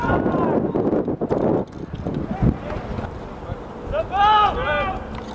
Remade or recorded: recorded